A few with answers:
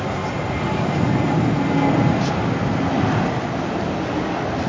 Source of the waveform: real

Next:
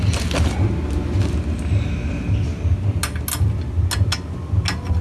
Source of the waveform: real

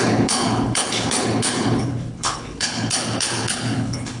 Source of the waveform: fake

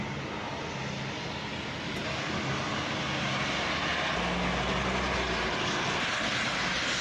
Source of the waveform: real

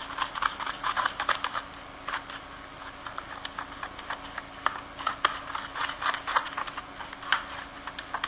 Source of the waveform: real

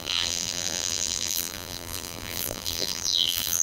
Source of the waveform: fake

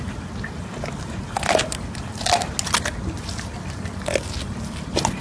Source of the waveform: real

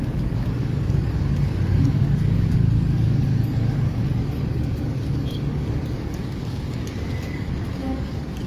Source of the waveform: fake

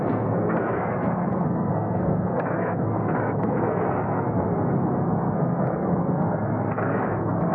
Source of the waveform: fake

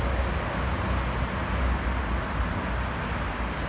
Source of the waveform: real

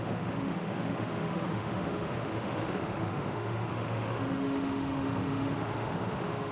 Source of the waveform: fake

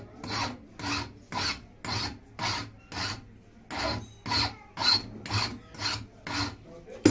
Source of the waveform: real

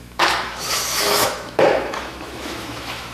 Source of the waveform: fake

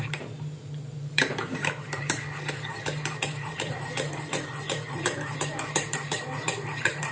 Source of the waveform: fake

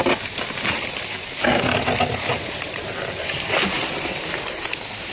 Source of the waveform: real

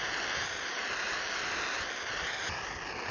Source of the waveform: real